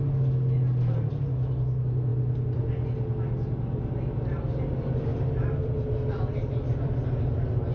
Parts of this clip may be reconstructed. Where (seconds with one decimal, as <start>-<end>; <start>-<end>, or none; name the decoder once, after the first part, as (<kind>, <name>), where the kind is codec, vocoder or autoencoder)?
5.1-6.9 (vocoder, BigVGAN v2)